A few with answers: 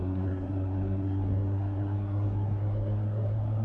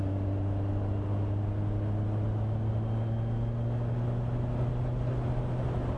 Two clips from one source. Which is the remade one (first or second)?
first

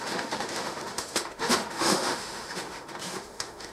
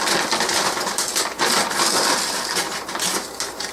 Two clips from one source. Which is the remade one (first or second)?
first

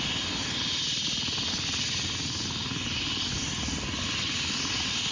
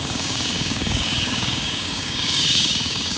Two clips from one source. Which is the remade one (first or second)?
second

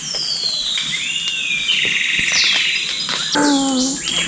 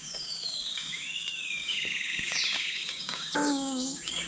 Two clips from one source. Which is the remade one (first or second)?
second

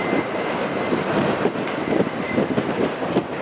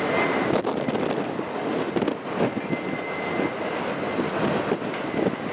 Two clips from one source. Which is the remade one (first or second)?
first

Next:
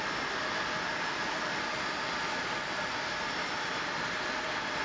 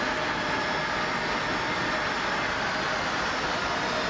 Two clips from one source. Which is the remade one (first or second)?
first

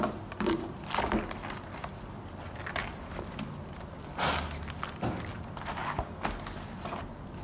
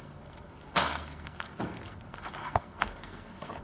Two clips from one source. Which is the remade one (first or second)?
second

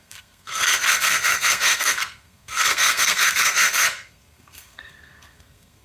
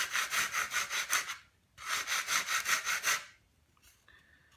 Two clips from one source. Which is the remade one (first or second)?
first